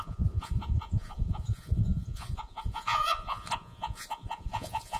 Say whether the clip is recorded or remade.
remade